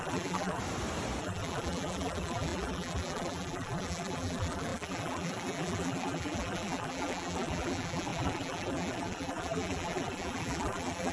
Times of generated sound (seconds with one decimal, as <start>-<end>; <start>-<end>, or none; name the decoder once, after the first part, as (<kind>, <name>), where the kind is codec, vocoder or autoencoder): 0.0-0.6 (vocoder, BigVGAN v2); 1.2-11.1